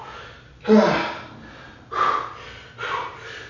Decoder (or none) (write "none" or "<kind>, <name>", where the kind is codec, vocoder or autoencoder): none